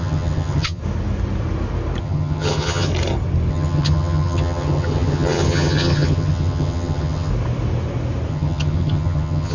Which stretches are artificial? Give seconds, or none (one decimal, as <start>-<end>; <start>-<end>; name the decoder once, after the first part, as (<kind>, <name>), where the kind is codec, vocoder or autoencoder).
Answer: 0.0-0.8 (vocoder, HiFi-GAN); 2.0-2.9; 3.5-7.3; 8.3-9.5